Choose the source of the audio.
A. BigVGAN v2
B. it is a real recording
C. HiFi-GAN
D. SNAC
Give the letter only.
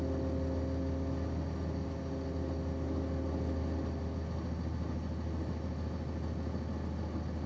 B